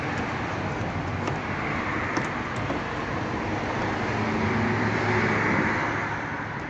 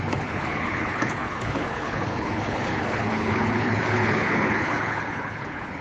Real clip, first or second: first